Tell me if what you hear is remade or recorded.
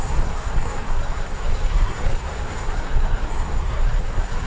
remade